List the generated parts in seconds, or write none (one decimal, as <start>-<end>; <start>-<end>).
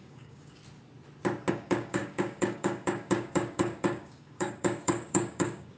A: 0.0-0.6; 1.5-5.8